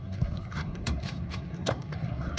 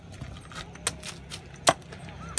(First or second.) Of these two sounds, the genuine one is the second